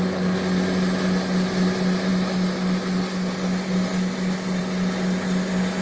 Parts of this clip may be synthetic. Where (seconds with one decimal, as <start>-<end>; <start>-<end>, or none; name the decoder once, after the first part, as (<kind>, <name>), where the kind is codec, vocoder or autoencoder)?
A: none